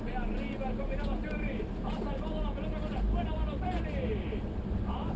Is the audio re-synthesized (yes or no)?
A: no